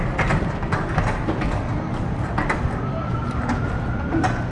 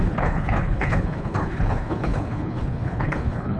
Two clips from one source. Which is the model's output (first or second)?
second